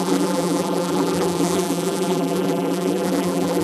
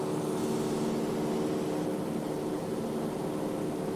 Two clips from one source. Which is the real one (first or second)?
second